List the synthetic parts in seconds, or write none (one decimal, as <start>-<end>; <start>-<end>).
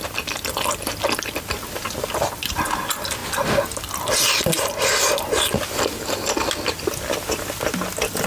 none